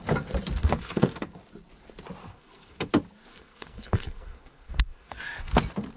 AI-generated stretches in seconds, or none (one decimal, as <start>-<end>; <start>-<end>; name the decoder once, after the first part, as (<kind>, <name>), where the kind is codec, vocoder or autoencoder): 0.6-1.4 (codec, SNAC); 2.2-2.9; 3.3-5.6